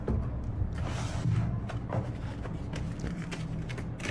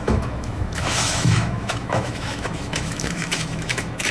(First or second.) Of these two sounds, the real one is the first